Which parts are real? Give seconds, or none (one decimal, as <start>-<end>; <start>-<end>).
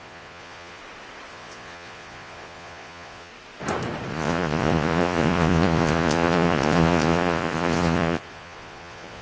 0.8-1.3; 3.3-4.1